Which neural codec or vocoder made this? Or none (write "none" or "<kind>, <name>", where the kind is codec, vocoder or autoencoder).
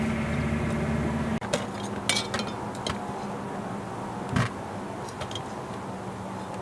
none